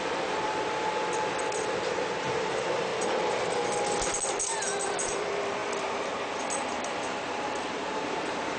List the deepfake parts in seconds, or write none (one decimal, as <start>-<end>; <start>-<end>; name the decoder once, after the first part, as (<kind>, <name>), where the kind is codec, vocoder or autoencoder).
0.0-2.9 (vocoder, BigVGAN v2); 4.3-8.6

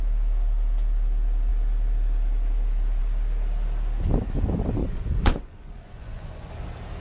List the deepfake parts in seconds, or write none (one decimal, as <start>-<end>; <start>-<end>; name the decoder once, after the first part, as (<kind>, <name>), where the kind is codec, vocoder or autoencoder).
4.8-6.5 (vocoder, Vocos)

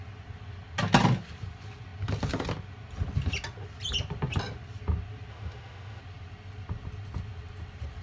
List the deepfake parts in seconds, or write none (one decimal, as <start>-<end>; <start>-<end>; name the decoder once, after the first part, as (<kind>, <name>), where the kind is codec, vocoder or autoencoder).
5.3-6.0 (autoencoder, DAC-VAE)

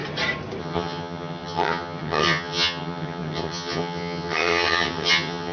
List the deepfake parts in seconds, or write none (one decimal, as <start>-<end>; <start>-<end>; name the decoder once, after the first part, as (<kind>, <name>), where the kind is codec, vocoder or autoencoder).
0.6-5.5 (vocoder, HiFi-GAN)

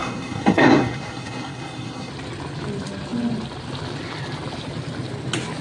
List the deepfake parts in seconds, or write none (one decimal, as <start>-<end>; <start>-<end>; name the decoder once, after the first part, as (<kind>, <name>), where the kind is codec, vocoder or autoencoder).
0.0-2.1 (codec, SNAC)